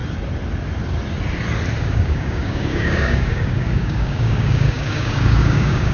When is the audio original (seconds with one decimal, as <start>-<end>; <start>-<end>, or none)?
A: 0.0-1.8